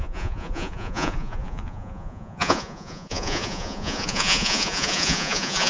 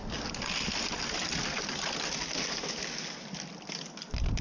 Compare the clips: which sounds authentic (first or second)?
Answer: second